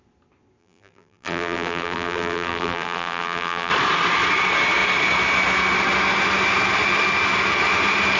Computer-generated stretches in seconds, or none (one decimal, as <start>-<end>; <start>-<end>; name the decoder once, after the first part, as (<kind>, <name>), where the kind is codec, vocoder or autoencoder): 0.6-3.7 (vocoder, BigVGAN v2)